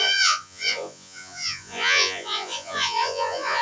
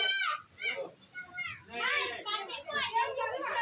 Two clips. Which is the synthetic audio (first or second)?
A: first